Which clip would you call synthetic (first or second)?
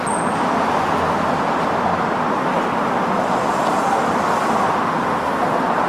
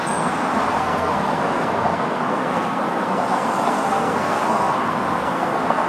second